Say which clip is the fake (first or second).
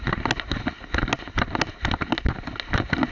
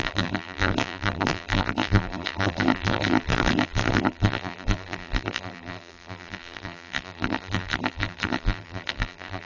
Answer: second